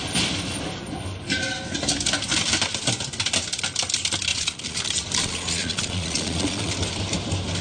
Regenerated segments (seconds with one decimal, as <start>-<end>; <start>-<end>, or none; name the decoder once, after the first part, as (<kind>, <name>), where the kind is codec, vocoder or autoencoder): 4.3-4.8 (vocoder, Vocos); 5.2-6.7